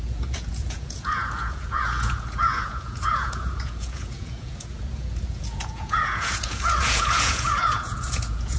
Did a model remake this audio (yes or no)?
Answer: yes